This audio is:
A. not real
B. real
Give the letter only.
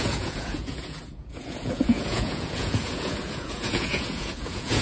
A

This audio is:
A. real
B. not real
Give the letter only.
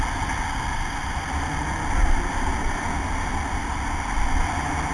A